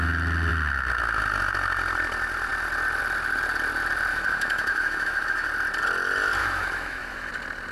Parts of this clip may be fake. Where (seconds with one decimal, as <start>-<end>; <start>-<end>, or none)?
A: 4.1-5.5; 6.4-7.3